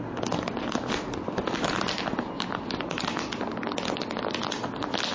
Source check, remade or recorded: recorded